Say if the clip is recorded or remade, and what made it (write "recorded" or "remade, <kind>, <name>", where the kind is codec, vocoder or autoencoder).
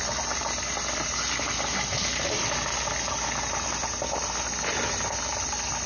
recorded